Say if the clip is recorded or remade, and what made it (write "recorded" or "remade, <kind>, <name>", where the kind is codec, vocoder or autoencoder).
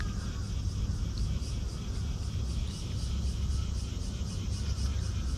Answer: recorded